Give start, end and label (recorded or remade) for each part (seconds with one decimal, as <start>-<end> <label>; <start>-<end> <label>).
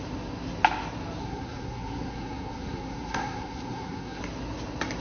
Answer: 0.0-1.2 recorded; 1.2-4.2 remade; 4.2-5.0 recorded